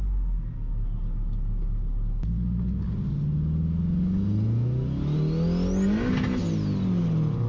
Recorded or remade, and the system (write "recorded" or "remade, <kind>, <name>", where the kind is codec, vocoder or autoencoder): recorded